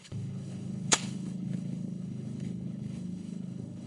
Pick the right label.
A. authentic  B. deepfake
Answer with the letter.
B